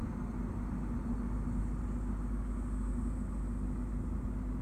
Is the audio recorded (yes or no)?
yes